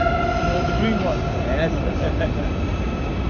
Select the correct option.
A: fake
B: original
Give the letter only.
B